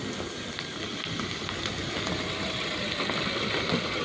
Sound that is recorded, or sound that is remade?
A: recorded